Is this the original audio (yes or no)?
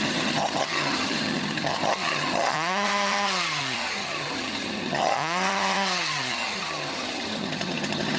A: no